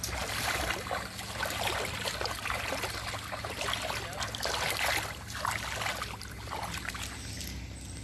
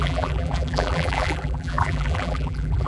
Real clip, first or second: first